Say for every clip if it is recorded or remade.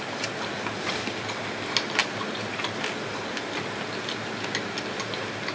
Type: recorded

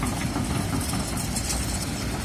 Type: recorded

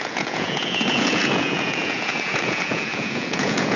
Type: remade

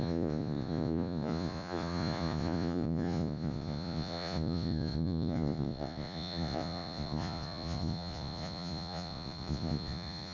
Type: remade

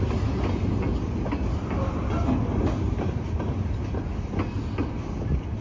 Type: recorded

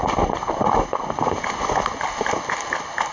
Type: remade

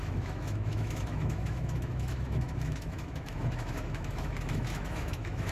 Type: remade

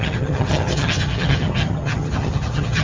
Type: remade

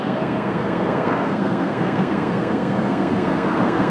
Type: remade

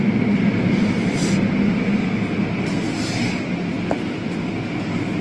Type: recorded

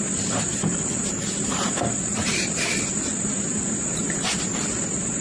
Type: recorded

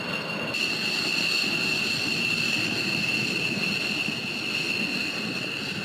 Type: recorded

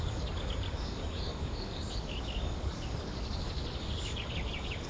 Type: remade